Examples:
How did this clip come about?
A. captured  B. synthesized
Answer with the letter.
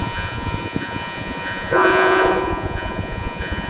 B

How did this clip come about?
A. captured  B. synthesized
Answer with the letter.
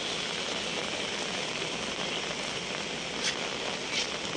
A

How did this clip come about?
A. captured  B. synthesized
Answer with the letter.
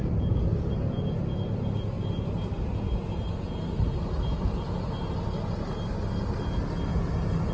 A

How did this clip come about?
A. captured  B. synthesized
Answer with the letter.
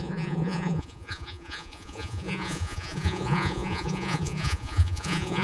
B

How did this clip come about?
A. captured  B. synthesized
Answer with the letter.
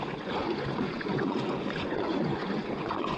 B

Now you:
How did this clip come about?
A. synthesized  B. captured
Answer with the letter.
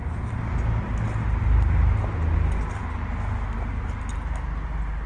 B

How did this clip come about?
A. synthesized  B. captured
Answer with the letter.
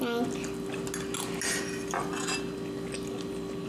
B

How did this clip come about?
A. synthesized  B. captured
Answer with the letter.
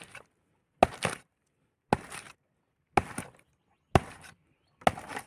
B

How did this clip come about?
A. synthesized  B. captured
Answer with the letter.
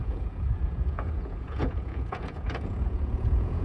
A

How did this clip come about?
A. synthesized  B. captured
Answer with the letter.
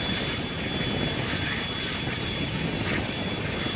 B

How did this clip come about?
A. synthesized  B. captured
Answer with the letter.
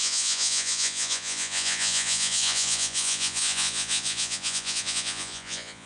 A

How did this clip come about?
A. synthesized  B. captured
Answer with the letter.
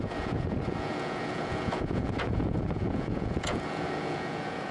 A